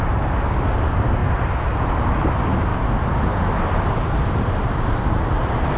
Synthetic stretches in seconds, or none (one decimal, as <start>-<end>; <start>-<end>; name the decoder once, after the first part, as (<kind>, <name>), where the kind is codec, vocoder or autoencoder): 2.7-5.8 (vocoder, BigVGAN v2)